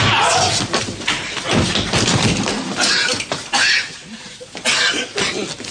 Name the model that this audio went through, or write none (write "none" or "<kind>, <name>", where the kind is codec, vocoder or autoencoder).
none